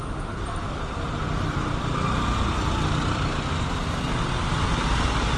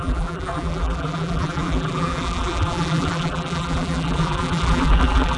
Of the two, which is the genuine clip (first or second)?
first